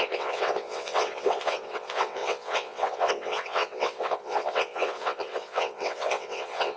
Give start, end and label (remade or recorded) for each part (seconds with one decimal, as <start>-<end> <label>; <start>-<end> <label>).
0.0-6.8 remade